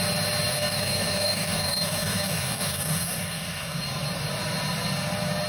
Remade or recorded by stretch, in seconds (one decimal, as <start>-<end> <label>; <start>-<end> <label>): 0.0-0.5 recorded; 0.5-3.8 remade; 3.8-5.5 recorded